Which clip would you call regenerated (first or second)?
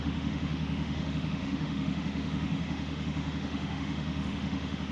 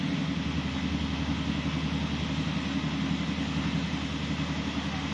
first